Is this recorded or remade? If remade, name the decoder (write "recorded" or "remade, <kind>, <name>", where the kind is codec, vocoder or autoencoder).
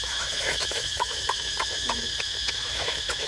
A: remade, autoencoder, DAC-VAE